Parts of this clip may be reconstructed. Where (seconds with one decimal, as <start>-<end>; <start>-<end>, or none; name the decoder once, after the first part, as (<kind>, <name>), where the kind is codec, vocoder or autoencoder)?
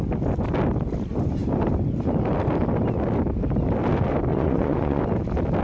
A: 4.3-5.0 (vocoder, Vocos)